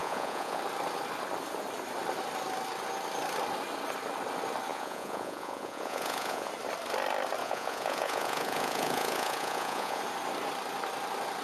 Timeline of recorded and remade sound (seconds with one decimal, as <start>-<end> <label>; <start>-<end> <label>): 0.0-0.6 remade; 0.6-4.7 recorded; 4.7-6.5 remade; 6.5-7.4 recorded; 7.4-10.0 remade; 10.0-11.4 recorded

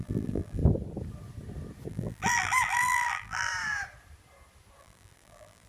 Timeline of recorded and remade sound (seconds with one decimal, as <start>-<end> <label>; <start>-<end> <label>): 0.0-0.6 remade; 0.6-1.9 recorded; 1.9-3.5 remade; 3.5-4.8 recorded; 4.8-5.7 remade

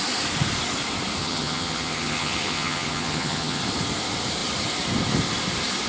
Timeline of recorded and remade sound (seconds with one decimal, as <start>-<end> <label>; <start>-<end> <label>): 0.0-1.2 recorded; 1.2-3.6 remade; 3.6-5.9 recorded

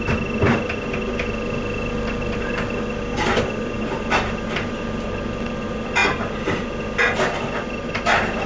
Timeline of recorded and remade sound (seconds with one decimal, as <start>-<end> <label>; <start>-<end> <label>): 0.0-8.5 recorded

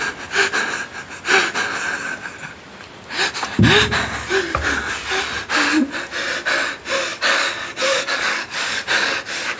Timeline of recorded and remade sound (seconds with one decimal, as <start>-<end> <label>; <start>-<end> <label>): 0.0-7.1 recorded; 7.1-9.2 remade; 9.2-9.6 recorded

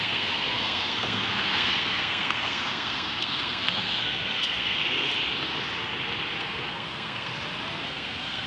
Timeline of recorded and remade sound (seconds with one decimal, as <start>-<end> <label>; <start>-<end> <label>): 0.0-5.1 remade; 5.1-6.4 recorded; 6.4-7.3 remade; 7.3-7.8 recorded; 7.8-8.5 remade

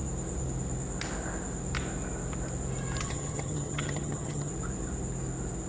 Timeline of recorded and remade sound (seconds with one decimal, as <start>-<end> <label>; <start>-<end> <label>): 0.0-3.0 recorded; 3.0-4.5 remade; 4.5-5.7 recorded

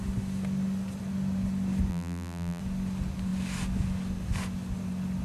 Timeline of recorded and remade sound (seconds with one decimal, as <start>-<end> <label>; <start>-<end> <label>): 0.0-1.9 recorded; 1.9-2.6 remade; 2.6-5.2 recorded